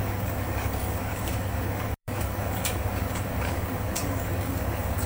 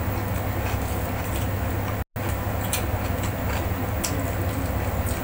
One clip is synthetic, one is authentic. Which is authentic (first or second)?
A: second